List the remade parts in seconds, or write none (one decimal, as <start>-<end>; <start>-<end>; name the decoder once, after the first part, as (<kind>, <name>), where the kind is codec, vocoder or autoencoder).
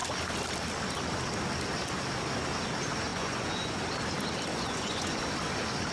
3.1-3.8 (vocoder, Vocos); 4.5-5.2